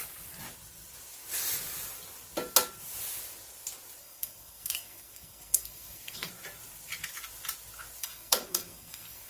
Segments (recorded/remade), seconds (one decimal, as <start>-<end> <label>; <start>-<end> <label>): 0.0-4.0 recorded; 4.0-6.3 remade; 6.3-8.0 recorded; 8.0-9.3 remade